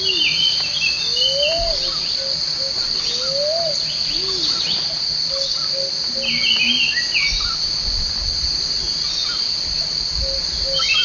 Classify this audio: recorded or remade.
recorded